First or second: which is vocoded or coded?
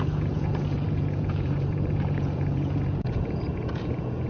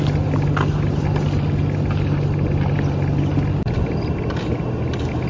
first